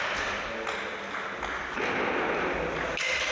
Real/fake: real